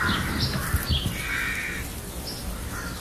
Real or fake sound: real